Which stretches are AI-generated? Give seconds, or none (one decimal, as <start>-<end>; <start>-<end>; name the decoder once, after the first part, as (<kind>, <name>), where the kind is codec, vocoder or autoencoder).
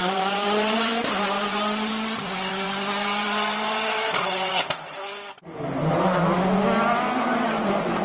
0.0-1.9 (vocoder, BigVGAN v2); 2.5-4.5